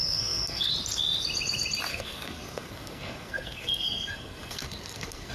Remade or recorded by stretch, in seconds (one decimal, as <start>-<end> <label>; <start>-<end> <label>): 0.0-0.7 remade; 0.7-1.9 recorded; 1.9-5.3 remade